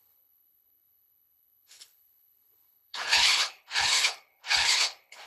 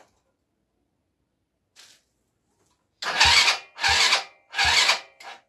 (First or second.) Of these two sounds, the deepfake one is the first